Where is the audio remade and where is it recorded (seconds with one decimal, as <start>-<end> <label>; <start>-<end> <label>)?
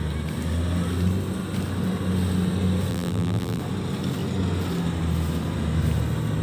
0.0-2.9 recorded; 2.9-3.6 remade; 3.6-6.4 recorded